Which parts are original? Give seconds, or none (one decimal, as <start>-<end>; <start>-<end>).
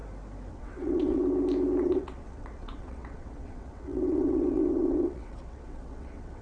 0.0-0.5; 1.2-1.8